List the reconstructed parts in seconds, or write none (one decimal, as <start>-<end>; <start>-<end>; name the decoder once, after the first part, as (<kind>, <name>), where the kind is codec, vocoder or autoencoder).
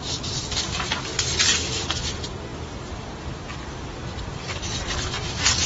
none